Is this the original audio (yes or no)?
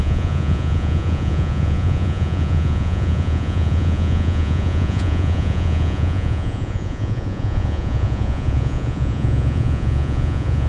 no